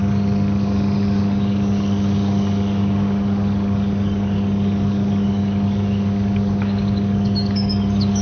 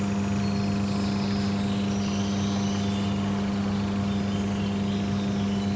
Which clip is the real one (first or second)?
second